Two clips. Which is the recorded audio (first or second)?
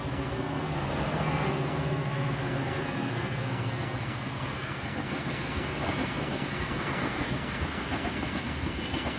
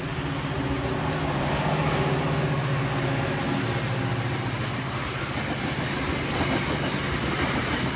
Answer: second